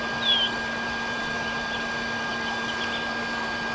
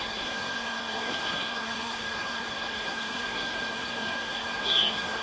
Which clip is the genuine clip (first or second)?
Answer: first